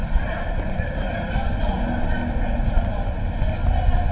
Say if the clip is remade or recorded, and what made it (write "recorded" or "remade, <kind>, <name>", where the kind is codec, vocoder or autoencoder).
recorded